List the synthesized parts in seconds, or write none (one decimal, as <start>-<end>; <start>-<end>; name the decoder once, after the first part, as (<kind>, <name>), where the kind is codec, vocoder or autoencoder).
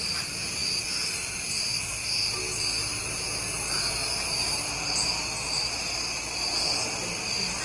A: none